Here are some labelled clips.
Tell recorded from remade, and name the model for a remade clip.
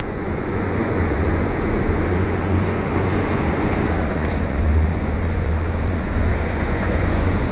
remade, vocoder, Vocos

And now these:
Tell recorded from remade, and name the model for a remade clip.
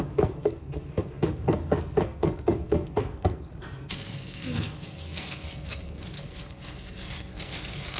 remade, codec, SNAC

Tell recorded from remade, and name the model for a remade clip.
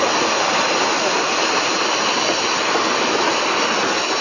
recorded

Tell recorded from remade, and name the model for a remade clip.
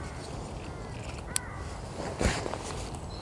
recorded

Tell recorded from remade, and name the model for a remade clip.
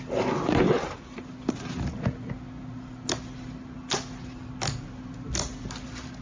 recorded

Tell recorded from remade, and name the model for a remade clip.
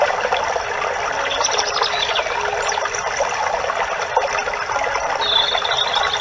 recorded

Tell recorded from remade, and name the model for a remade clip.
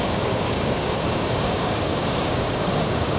remade, codec, DAC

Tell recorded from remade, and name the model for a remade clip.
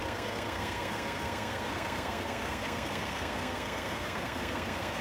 remade, codec, SNAC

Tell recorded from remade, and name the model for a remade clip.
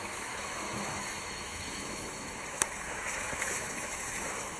remade, autoencoder, DAC-VAE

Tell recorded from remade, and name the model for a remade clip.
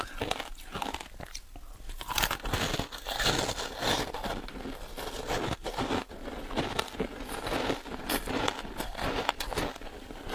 recorded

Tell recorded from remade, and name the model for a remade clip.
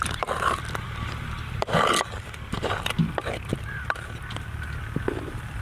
recorded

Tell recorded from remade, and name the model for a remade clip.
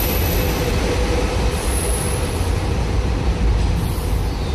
recorded